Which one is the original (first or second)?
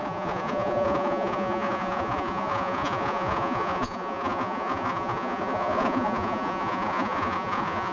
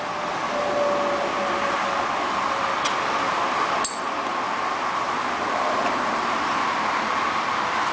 second